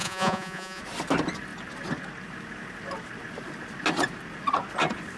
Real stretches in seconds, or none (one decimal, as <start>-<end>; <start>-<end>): 0.8-5.2